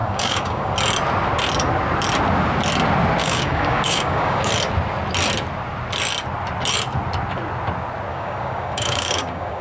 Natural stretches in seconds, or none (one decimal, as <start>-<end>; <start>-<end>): 0.7-3.2; 4.5-8.1